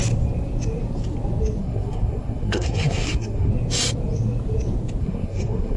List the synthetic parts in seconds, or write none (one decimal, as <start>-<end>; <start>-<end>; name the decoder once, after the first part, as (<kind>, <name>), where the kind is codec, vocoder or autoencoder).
1.6-3.5 (codec, SNAC); 5.0-5.8